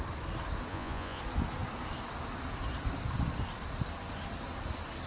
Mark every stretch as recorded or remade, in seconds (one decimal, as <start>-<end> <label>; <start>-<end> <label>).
0.0-0.7 recorded; 0.7-1.2 remade; 1.2-5.1 recorded